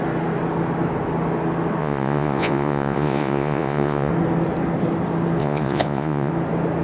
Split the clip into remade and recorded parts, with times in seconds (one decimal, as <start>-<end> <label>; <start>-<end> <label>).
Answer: 0.0-1.8 recorded; 1.8-4.1 remade; 4.1-5.4 recorded; 5.4-6.3 remade; 6.3-6.8 recorded